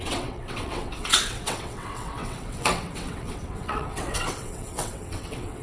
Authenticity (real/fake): fake